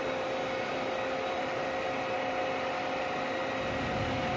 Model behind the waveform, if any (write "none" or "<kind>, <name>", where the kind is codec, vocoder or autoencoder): none